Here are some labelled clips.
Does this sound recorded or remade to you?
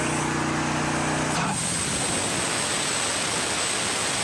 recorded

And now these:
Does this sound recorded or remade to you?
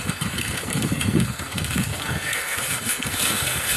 remade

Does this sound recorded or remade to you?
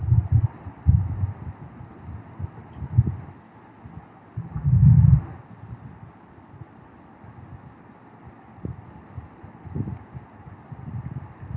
recorded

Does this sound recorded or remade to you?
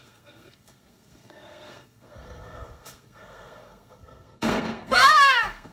remade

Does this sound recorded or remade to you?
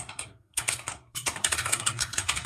remade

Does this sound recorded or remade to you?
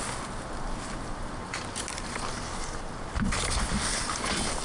recorded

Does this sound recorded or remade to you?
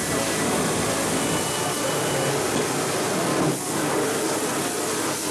recorded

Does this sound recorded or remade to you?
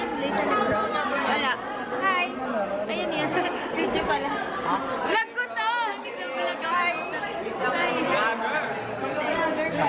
recorded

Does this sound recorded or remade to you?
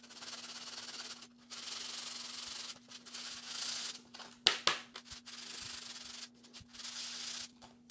recorded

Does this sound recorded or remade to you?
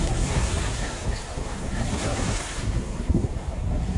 remade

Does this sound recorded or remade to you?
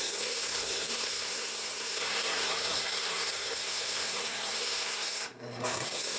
remade